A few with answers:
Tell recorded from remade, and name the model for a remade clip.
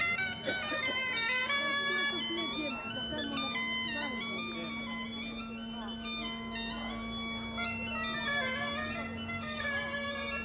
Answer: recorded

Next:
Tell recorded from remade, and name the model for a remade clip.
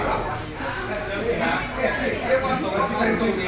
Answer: recorded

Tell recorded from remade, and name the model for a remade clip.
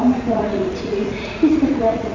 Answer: remade, vocoder, Vocos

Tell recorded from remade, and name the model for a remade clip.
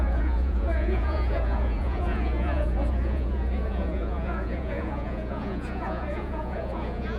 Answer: remade, vocoder, Vocos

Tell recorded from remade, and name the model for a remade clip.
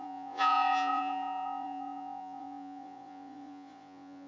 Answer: remade, vocoder, Vocos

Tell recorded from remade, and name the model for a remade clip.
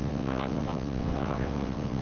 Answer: remade, vocoder, WaveNeXt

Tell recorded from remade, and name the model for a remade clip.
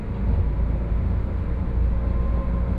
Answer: recorded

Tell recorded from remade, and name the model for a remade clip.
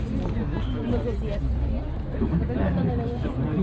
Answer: recorded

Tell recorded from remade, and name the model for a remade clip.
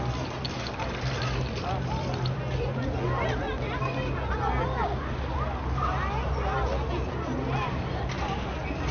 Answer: recorded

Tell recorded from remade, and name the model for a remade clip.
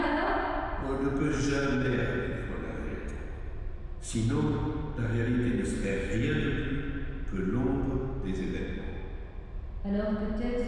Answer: recorded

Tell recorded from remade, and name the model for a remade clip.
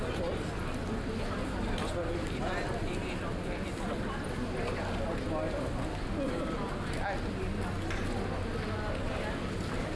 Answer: recorded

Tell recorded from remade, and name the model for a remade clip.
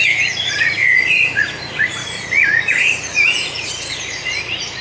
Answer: remade, vocoder, Vocos